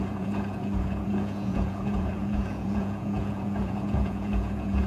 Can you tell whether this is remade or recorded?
remade